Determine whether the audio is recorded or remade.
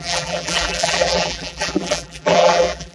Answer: remade